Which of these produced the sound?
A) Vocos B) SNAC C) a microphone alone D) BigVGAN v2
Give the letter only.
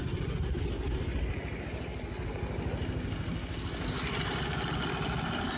C